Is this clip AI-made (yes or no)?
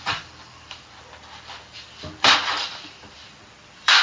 yes